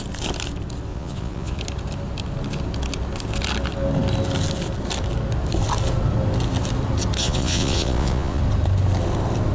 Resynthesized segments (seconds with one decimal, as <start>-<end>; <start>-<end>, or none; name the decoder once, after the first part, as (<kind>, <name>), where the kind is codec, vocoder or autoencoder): 0.9-1.6 (vocoder, Vocos); 7.2-8.4